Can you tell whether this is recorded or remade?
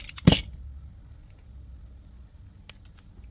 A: recorded